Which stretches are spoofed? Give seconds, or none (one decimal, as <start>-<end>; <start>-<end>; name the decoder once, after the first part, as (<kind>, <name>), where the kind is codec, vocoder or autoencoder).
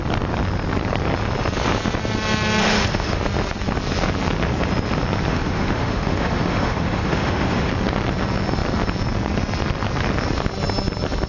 2.6-3.2 (autoencoder, DAC-VAE); 5.3-7.7